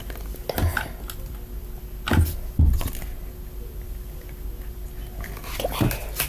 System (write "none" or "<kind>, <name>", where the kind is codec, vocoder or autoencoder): none